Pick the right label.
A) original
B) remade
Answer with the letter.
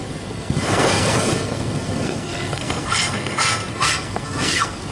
B